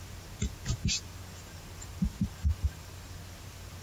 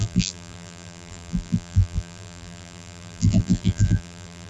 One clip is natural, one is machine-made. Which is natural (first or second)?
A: first